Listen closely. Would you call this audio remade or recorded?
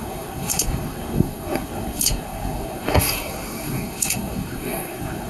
remade